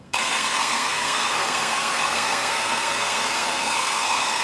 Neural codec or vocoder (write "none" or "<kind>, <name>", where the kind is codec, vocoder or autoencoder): codec, SNAC